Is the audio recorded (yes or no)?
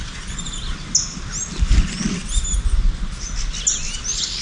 yes